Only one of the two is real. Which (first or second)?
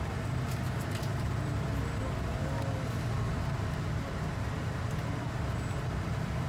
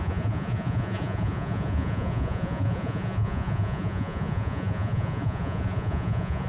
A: first